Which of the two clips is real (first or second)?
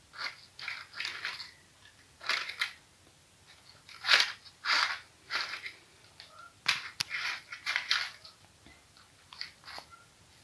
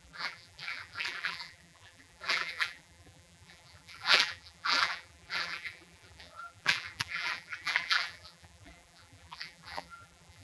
first